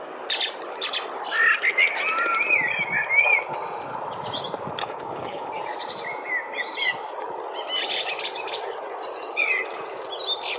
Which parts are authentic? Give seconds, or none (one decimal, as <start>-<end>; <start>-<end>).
0.0-4.8; 5.5-10.6